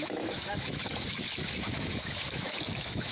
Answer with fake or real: fake